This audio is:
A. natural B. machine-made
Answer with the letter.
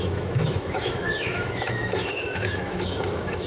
B